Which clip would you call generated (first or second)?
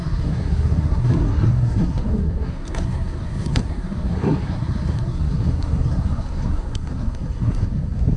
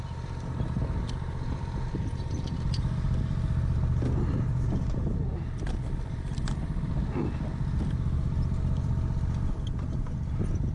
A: first